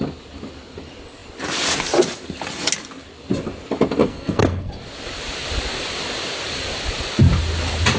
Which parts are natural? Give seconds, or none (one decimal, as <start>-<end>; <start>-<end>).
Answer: 0.0-4.0; 4.7-8.0